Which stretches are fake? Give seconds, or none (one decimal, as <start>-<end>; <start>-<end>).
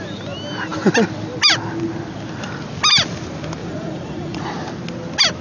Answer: 3.6-4.5